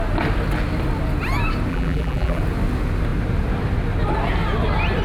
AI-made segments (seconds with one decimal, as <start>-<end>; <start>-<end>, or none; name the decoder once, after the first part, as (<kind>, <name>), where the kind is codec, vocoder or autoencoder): 1.7-2.4 (vocoder, BigVGAN v2)